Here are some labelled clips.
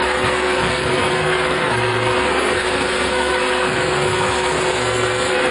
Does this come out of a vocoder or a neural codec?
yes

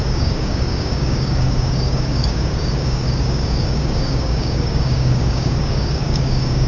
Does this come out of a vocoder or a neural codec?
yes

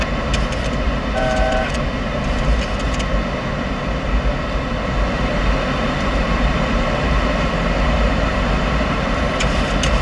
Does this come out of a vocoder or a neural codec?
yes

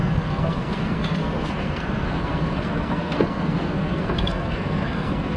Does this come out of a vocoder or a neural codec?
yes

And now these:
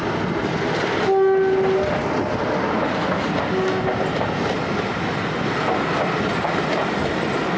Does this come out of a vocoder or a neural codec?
no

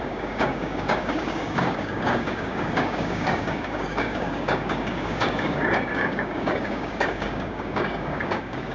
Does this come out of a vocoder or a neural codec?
yes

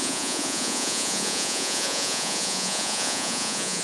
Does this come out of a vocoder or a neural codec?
yes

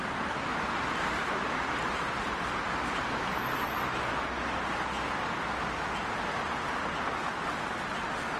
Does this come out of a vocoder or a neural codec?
no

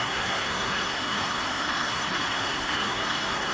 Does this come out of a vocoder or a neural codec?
yes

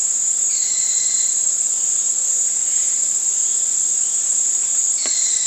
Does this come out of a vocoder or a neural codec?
yes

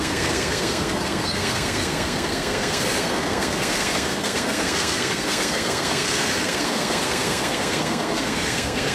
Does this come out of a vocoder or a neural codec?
yes